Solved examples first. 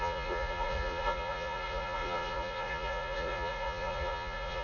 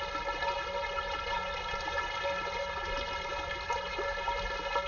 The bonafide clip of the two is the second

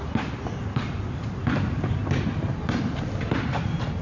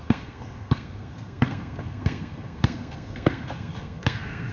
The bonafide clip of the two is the first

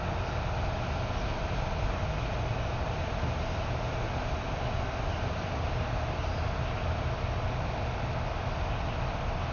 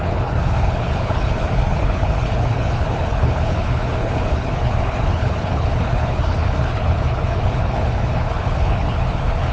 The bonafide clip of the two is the first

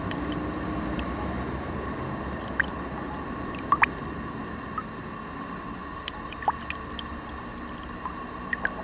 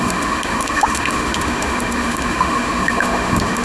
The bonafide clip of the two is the first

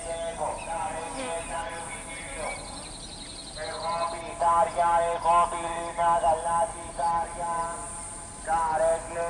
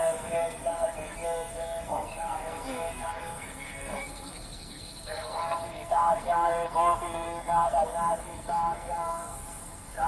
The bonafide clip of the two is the first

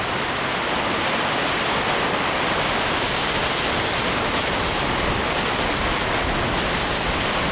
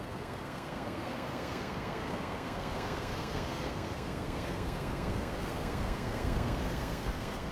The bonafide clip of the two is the first